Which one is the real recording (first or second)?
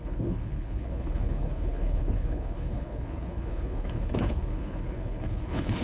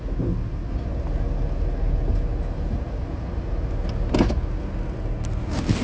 second